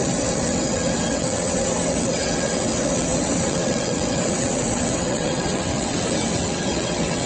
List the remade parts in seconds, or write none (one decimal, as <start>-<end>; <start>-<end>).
0.0-7.3